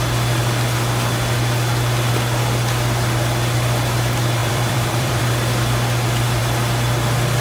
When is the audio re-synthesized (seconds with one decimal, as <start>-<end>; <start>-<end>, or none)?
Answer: 4.4-5.2